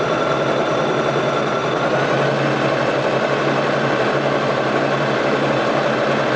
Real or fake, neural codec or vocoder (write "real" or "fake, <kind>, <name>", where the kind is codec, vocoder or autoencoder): real